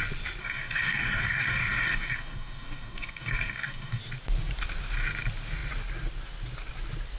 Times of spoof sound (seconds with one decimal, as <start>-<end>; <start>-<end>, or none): 0.4-4.0